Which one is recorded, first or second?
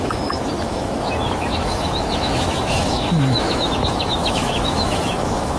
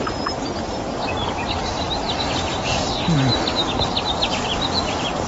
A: second